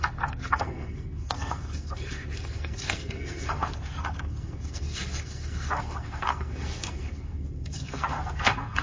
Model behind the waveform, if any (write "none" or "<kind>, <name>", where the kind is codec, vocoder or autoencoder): codec, SNAC